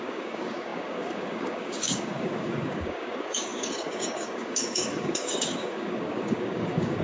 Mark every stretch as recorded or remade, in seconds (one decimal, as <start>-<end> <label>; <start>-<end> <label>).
0.0-7.0 remade

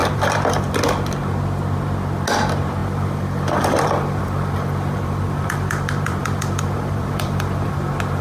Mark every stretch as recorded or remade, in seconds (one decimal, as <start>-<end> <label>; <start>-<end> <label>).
0.0-0.7 remade; 0.7-2.8 recorded; 2.8-7.7 remade; 7.7-8.2 recorded

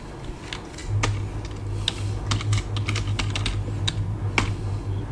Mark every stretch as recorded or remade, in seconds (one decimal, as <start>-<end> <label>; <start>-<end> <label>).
0.0-5.1 recorded

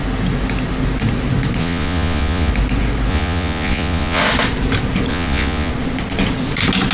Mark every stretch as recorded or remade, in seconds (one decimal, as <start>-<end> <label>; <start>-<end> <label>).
0.0-1.6 recorded; 1.6-2.5 remade; 2.5-3.1 recorded; 3.1-4.2 remade; 4.2-5.1 recorded; 5.1-5.7 remade; 5.7-6.9 recorded

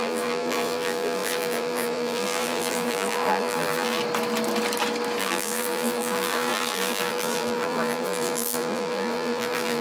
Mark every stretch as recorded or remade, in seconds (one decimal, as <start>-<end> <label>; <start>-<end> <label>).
0.0-4.0 remade; 4.0-5.2 recorded; 5.2-9.8 remade

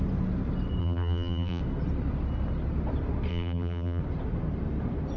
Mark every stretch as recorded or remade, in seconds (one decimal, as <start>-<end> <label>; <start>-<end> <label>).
0.0-0.8 recorded; 0.8-1.6 remade; 1.6-3.3 recorded; 3.3-4.0 remade; 4.0-5.2 recorded